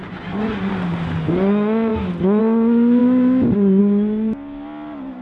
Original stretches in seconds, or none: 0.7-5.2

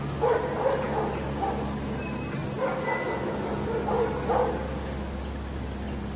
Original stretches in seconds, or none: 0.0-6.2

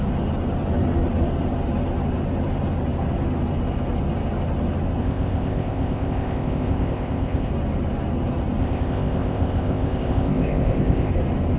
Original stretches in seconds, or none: 0.0-5.0; 7.5-8.6; 11.1-11.6